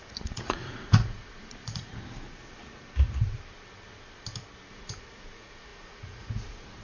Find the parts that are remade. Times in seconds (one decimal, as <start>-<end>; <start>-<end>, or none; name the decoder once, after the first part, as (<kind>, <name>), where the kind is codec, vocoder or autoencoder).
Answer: 0.0-1.9 (vocoder, Vocos); 4.7-6.8